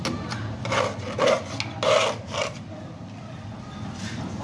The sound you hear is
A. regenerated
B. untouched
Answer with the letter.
B